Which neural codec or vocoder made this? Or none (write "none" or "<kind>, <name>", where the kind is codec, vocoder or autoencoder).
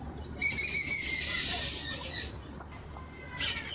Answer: none